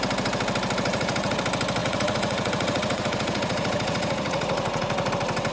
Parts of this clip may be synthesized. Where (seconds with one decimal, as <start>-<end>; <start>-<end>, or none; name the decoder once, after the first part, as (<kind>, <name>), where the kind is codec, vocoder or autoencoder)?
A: 0.9-1.4 (vocoder, Vocos); 1.8-5.1